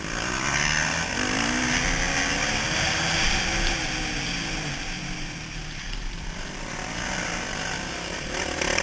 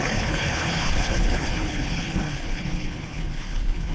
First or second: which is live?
first